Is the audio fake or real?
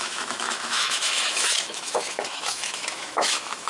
fake